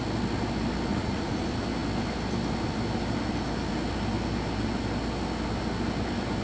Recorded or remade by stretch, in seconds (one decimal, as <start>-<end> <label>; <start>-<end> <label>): 0.0-0.9 recorded; 0.9-1.4 remade; 1.4-6.4 recorded